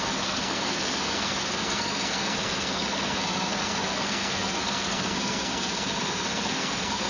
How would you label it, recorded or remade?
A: remade